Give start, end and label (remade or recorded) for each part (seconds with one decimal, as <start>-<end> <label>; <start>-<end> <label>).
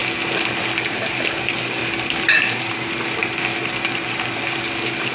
0.0-5.1 recorded